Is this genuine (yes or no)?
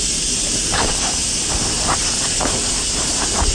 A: yes